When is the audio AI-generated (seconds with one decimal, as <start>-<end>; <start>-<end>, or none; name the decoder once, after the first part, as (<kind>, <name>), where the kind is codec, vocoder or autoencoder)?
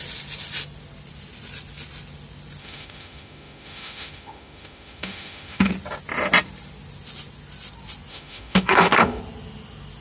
2.6-5.7 (autoencoder, DAC-VAE); 8.1-9.2